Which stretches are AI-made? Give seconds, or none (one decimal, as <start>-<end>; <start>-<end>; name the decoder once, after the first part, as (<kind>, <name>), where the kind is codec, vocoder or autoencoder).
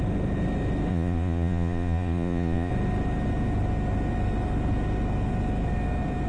0.9-2.7 (vocoder, Vocos)